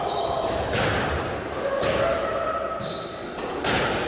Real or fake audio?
real